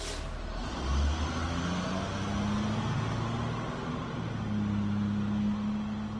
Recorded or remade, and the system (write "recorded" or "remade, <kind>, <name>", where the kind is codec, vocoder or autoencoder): recorded